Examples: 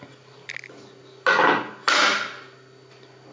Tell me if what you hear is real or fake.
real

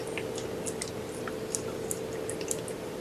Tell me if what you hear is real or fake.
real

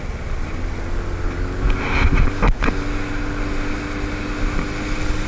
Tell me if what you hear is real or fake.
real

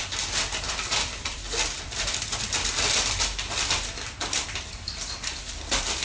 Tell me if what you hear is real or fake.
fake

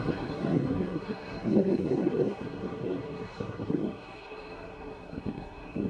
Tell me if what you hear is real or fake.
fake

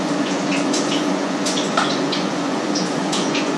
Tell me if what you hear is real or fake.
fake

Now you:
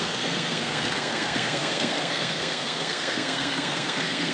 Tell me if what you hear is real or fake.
fake